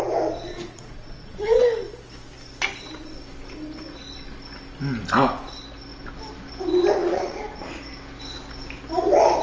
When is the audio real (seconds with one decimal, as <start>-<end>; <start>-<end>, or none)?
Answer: 0.0-0.5; 1.6-7.0; 7.8-9.4